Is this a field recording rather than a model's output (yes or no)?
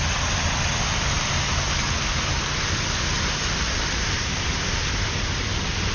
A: yes